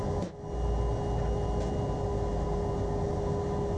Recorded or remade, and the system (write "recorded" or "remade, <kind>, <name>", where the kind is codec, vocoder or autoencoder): recorded